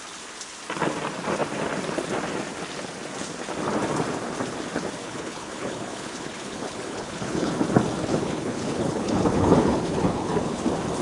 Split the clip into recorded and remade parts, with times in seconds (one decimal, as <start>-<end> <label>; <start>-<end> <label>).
0.0-5.0 recorded; 5.0-7.5 remade; 7.5-8.1 recorded; 8.1-10.6 remade; 10.6-11.0 recorded

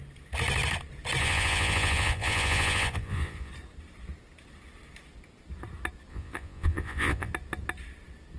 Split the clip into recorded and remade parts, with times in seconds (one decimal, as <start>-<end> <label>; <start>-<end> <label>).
0.0-1.2 recorded; 1.2-3.5 remade; 3.5-6.1 recorded; 6.1-7.3 remade; 7.3-8.4 recorded

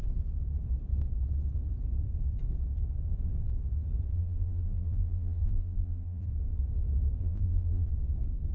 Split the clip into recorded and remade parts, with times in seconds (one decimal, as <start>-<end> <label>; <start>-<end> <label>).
0.0-4.1 recorded; 4.1-6.3 remade; 6.3-7.2 recorded; 7.2-7.9 remade; 7.9-8.5 recorded

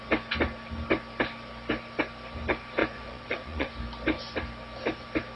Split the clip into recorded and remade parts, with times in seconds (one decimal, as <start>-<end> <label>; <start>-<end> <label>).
0.0-2.8 recorded; 2.8-3.7 remade; 3.7-5.4 recorded

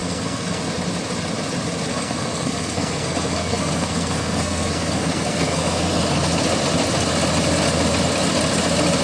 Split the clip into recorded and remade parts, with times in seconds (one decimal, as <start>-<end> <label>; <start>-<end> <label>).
0.0-0.6 remade; 0.6-1.9 recorded; 1.9-5.9 remade; 5.9-9.0 recorded